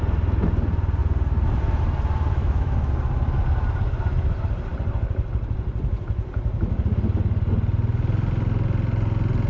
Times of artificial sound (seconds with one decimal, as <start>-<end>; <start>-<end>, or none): 2.4-2.9